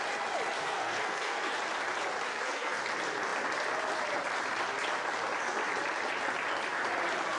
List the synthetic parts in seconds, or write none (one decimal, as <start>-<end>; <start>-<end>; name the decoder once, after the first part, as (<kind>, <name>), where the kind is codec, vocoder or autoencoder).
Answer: 0.6-1.5 (codec, SNAC); 2.3-2.8

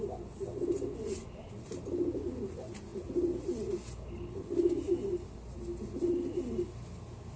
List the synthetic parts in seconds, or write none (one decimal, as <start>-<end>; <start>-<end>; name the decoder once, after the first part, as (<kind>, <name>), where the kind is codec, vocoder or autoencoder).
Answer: none

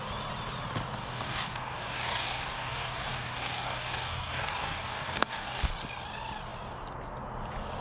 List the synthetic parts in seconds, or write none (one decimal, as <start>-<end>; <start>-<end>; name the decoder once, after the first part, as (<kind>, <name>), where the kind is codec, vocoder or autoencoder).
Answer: 1.0-5.7 (codec, DAC)

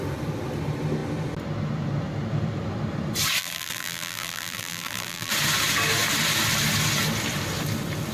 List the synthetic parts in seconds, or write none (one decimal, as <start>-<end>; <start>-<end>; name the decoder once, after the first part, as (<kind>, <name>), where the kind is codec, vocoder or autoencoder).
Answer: 3.4-5.3 (vocoder, BigVGAN v2)

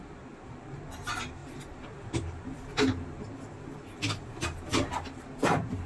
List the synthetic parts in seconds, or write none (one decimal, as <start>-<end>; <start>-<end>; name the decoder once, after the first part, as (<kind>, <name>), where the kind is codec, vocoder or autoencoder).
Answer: 0.0-5.9 (vocoder, BigVGAN v2)